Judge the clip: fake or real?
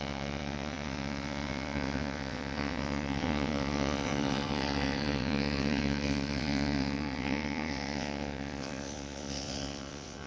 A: fake